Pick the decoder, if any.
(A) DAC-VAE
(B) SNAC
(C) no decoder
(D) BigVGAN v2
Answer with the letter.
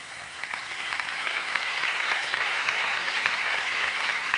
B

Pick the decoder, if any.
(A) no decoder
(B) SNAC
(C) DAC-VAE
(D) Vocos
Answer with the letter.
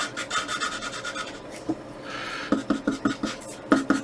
A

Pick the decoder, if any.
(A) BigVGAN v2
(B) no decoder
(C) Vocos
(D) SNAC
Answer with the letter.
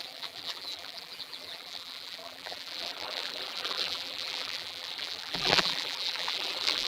A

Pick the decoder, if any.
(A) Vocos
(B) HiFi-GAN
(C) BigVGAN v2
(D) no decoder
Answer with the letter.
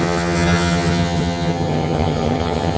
B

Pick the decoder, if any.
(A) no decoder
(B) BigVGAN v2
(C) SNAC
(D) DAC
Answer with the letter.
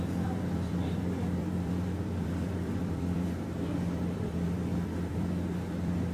B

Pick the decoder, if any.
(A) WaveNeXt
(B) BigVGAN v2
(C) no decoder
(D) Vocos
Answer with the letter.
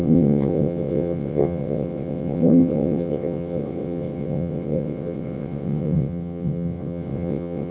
A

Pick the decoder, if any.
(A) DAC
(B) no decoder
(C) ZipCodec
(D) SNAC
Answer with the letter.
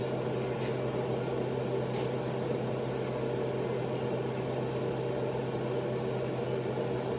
B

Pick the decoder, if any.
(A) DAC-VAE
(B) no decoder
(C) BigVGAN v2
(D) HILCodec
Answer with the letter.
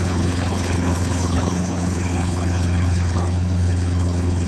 D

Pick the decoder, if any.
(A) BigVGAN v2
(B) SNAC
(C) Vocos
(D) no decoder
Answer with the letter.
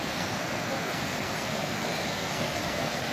B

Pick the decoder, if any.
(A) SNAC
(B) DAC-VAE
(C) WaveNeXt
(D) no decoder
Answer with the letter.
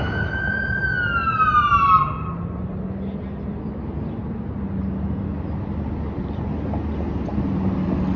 D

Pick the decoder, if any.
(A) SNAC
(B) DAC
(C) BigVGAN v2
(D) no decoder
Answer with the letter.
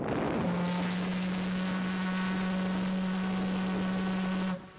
D